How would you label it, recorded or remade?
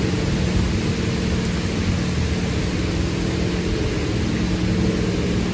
recorded